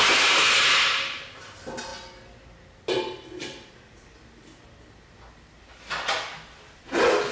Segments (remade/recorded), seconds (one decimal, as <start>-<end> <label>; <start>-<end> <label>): 0.0-7.3 recorded